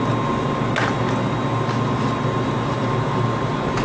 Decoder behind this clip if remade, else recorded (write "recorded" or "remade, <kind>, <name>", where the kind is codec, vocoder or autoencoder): recorded